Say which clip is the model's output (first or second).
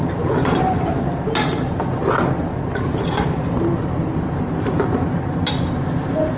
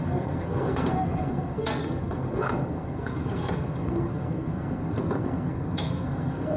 second